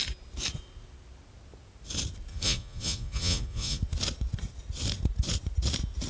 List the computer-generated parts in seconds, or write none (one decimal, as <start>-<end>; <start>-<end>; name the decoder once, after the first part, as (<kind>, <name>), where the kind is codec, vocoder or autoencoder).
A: 2.3-3.8 (vocoder, Vocos)